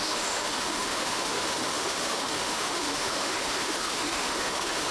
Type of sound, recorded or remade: remade